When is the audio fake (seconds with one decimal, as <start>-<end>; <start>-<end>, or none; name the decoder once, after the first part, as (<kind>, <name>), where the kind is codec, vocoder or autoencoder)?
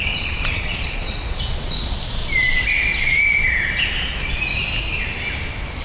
0.0-2.2 (vocoder, Vocos)